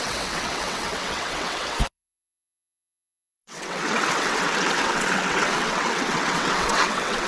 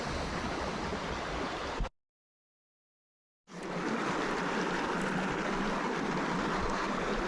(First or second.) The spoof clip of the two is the first